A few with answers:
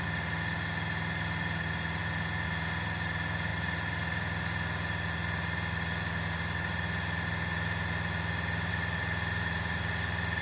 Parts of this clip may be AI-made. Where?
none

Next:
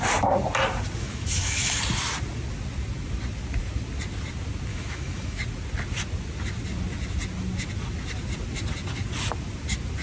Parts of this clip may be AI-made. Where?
1.0-1.8 (autoencoder, DAC-VAE); 4.7-5.4

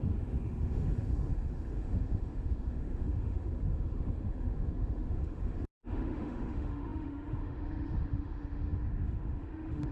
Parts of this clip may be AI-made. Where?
0.0-9.9 (autoencoder, DAC-VAE)

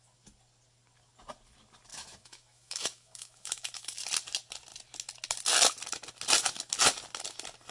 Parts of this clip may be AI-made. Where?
1.9-4.0 (autoencoder, DAC-VAE)

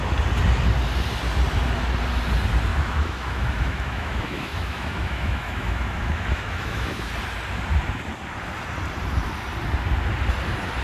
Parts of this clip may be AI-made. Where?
2.7-7.1 (autoencoder, DAC-VAE)